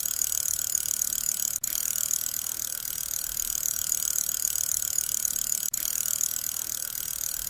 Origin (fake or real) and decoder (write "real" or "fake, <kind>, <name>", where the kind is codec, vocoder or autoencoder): real